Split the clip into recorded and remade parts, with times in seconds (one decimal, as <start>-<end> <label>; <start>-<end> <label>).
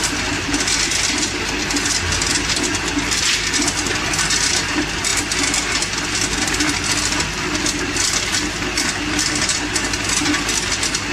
0.0-11.1 recorded